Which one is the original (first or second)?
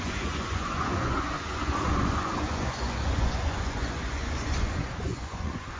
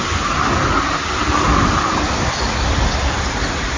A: second